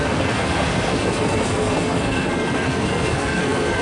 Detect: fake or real fake